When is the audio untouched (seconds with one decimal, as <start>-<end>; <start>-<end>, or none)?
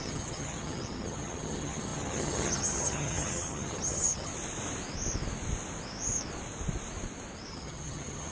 4.3-7.5